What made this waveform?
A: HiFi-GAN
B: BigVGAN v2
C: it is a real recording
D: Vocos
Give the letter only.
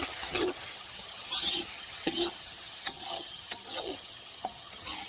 A